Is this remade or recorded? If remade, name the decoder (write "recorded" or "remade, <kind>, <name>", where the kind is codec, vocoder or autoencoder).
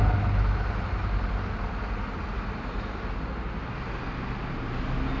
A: recorded